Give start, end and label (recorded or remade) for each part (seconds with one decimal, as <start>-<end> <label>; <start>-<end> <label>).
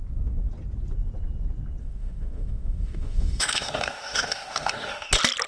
0.0-1.8 recorded; 1.8-5.1 remade; 5.1-5.5 recorded